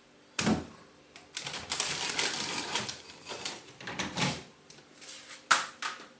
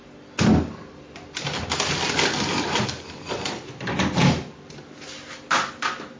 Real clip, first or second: second